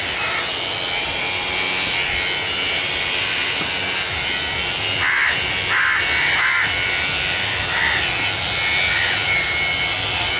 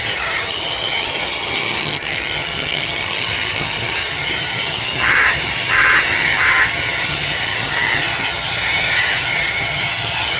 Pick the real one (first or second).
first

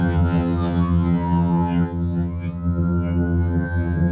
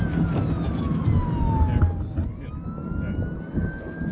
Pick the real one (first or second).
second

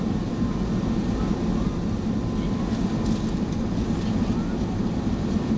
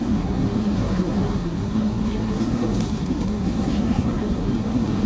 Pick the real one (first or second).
first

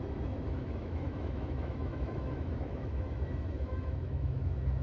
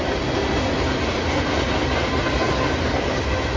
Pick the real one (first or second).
second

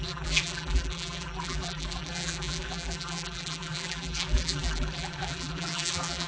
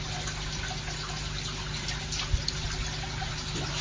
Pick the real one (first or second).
second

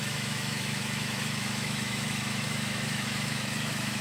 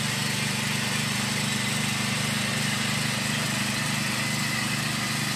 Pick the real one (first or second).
second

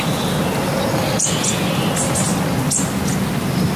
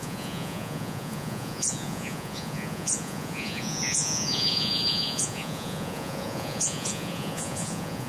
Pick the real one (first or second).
first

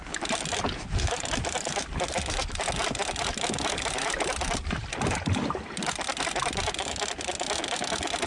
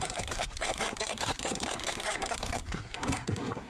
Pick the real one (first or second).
first